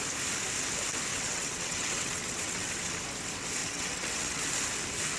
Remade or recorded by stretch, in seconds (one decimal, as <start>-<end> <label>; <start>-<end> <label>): 0.0-1.1 recorded; 1.1-3.0 remade; 3.0-3.6 recorded; 3.6-4.4 remade; 4.4-5.2 recorded